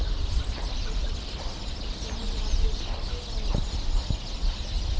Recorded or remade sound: recorded